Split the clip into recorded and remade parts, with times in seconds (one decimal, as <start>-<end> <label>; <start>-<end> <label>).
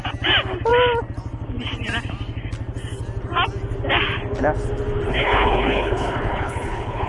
0.0-5.1 recorded; 5.1-7.1 remade